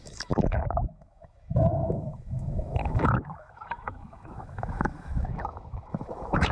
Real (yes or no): no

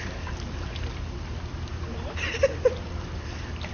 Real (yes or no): yes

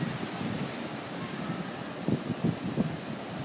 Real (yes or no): yes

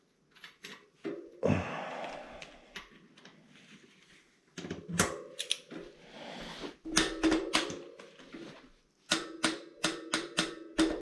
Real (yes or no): yes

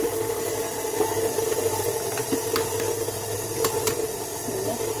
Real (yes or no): yes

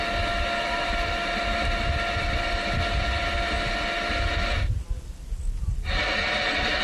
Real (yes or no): yes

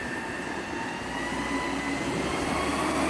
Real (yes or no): yes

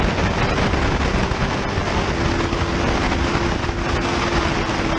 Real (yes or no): yes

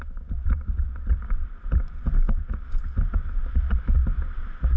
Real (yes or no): no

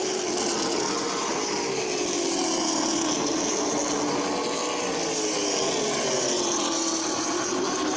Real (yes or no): yes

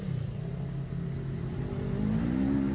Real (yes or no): yes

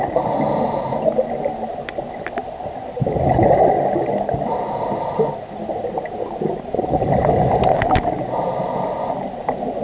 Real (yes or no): yes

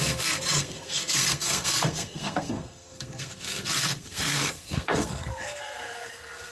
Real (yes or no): no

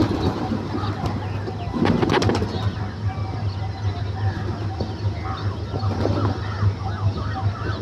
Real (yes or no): yes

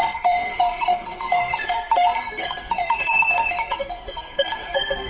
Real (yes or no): no